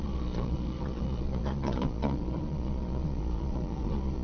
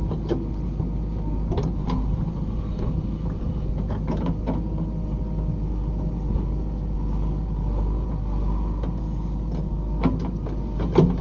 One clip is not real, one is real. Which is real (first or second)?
second